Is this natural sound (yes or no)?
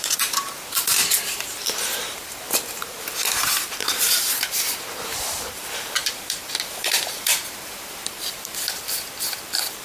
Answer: no